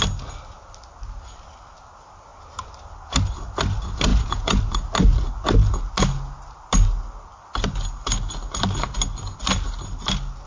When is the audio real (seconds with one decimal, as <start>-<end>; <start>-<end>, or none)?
0.0-4.1; 4.6-10.5